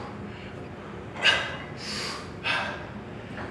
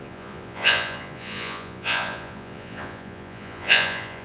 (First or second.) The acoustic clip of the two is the first